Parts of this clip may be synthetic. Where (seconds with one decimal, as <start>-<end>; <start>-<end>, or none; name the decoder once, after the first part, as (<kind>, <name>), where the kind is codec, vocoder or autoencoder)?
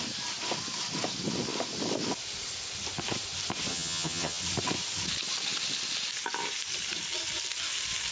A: 3.7-4.4 (vocoder, HiFi-GAN)